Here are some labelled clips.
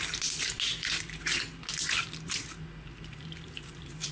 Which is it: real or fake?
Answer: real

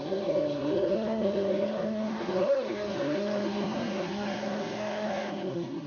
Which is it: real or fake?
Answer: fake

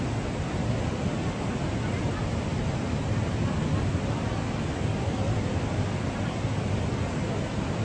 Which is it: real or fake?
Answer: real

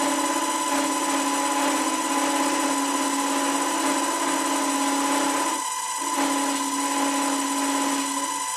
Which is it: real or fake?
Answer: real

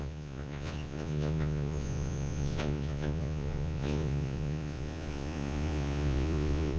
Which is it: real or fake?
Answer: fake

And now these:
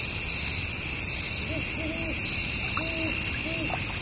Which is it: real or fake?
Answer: real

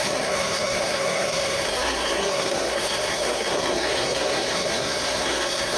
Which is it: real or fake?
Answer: fake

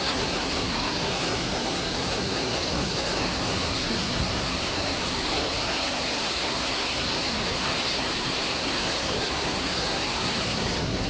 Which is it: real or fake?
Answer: fake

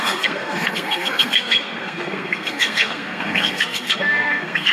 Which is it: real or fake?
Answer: fake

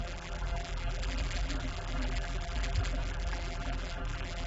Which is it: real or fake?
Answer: fake